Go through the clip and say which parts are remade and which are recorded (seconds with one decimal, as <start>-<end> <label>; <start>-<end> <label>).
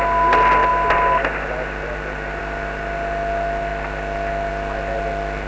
0.0-5.5 recorded